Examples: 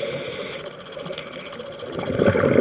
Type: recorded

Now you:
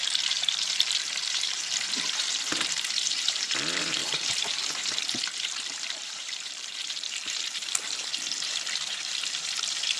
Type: remade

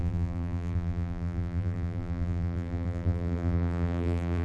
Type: remade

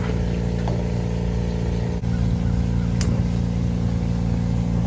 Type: recorded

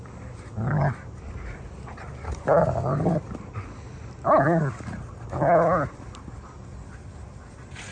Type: recorded